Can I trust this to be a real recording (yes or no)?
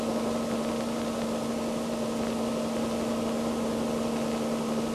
yes